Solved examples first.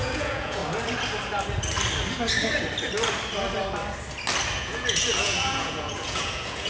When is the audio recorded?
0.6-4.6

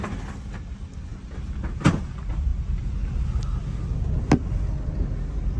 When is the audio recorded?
0.0-5.6

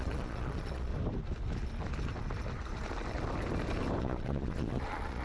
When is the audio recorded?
0.9-4.0

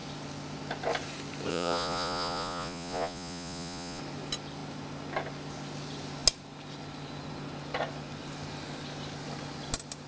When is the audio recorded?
0.0-1.5; 4.0-10.1

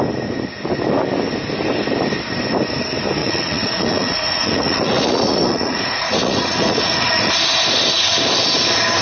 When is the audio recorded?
0.0-3.2; 7.3-9.0